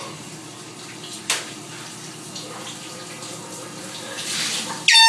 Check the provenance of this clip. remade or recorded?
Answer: recorded